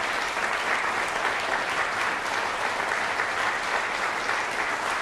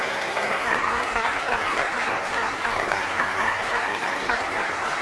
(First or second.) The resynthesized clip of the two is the second